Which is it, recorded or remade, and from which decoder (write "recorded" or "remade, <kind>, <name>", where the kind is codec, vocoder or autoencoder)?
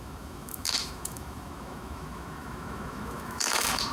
remade, autoencoder, DAC-VAE